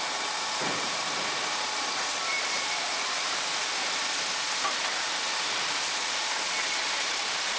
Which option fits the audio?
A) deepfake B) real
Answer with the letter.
A